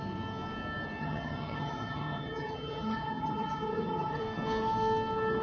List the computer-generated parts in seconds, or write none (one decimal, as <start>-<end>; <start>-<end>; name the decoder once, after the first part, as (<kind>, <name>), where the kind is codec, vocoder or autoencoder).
1.0-4.2 (vocoder, HiFi-GAN)